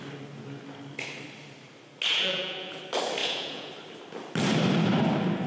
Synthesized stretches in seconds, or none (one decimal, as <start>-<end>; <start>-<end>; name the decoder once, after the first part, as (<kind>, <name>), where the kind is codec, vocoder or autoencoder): 2.1-2.8 (vocoder, Vocos); 3.2-3.7